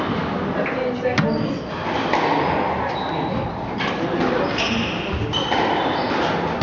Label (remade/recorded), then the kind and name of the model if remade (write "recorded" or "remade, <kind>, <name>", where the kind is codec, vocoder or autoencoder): recorded